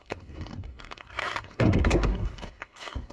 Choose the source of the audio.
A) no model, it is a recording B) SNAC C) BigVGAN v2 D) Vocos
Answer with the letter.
B